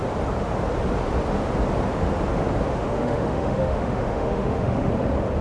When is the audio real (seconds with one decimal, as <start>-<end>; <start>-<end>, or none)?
0.0-2.7; 4.9-5.4